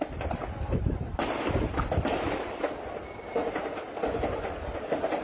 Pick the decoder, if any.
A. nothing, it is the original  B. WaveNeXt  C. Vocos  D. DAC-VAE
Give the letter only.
A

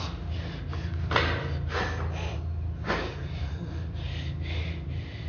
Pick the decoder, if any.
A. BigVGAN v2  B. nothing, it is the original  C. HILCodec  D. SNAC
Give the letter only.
B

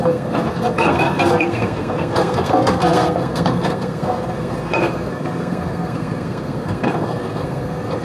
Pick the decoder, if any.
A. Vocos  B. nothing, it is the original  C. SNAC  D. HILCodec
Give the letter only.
C